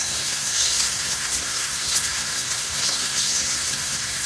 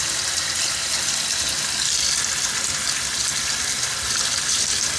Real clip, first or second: second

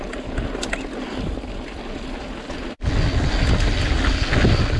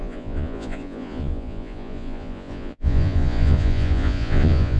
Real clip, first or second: first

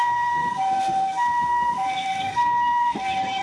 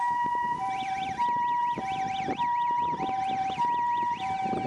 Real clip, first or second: second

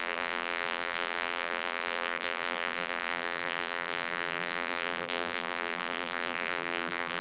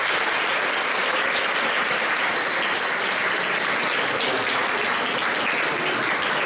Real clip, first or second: second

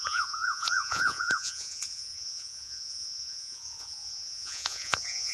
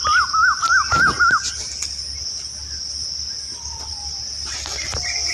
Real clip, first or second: second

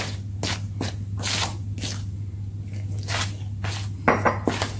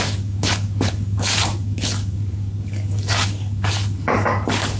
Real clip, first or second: first